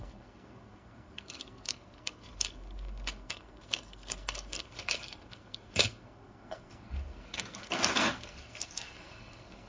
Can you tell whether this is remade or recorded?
remade